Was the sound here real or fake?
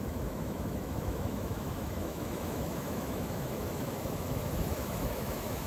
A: fake